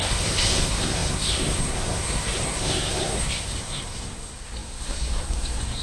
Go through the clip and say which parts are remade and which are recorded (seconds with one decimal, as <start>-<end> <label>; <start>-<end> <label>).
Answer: 0.0-5.8 remade